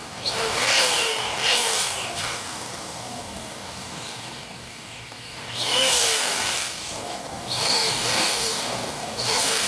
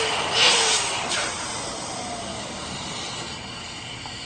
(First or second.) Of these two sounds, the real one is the second